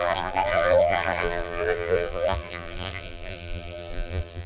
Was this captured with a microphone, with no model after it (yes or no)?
no